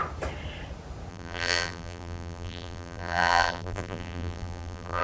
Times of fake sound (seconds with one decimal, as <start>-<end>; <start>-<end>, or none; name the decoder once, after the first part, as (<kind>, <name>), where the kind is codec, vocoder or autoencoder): 1.1-5.0 (vocoder, BigVGAN v2)

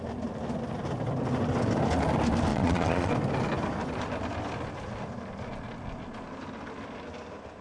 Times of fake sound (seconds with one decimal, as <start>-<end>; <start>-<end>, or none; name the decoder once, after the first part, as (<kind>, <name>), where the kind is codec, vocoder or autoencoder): 2.5-3.1 (vocoder, Vocos)

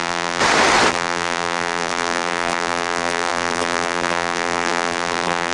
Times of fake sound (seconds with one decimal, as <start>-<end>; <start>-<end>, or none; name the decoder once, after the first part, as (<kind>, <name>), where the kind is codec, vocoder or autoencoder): 0.0-0.4 (vocoder, BigVGAN v2); 0.9-5.5

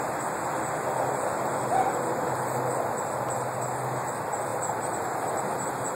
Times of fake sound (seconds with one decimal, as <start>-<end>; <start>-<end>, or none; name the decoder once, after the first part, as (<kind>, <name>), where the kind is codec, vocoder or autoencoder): 4.5-5.3 (vocoder, BigVGAN v2)